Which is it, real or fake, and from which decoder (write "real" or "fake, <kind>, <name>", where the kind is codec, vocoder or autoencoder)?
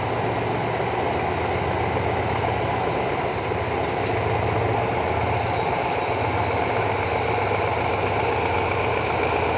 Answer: real